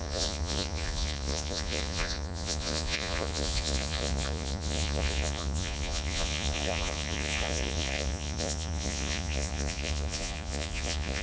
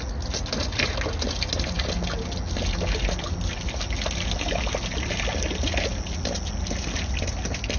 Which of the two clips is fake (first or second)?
first